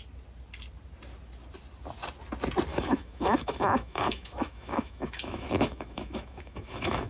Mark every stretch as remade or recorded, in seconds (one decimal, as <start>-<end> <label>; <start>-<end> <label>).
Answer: 0.0-2.7 recorded; 2.7-7.1 remade